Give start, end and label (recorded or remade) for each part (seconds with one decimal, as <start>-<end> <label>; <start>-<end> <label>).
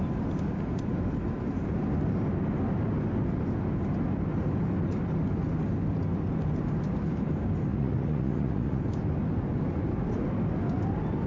0.0-7.7 recorded; 7.7-8.8 remade; 8.8-11.3 recorded